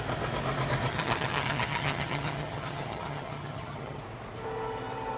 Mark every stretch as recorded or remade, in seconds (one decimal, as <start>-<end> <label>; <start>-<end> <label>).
0.0-0.9 recorded; 0.9-4.0 remade; 4.0-5.2 recorded